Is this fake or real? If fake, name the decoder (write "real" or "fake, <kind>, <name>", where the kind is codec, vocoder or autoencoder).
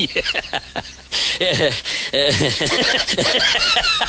fake, autoencoder, DAC-VAE